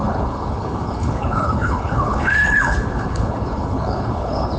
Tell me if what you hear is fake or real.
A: fake